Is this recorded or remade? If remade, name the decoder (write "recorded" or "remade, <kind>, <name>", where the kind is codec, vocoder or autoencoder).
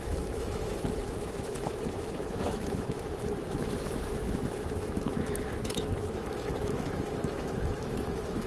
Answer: remade, autoencoder, DAC-VAE